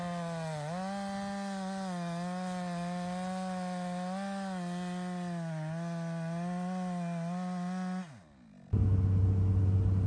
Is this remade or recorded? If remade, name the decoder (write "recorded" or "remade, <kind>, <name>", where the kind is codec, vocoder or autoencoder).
recorded